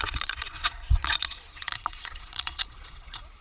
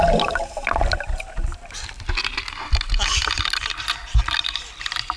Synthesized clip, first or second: first